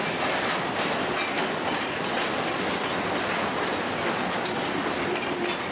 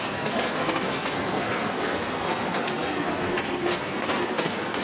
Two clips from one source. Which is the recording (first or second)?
first